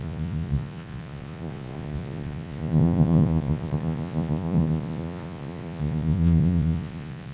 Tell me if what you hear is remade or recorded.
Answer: remade